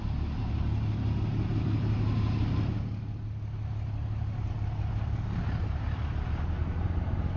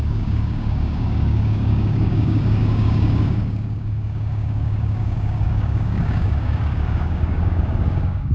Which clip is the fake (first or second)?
second